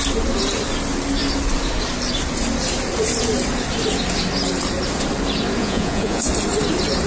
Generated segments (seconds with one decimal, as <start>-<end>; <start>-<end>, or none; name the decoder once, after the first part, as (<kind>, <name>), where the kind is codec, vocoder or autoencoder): 5.6-6.3 (vocoder, Vocos)